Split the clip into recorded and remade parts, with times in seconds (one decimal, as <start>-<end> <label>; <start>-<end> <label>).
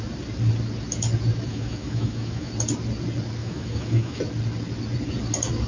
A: 0.0-1.5 recorded; 1.5-2.5 remade; 2.5-3.4 recorded; 3.4-4.2 remade; 4.2-5.7 recorded